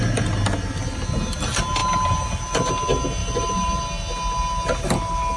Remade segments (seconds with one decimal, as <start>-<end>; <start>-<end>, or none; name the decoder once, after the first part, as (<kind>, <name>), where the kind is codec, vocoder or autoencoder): 3.2-3.8 (vocoder, BigVGAN v2)